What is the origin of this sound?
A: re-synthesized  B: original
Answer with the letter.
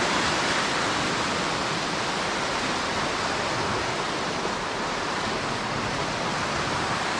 B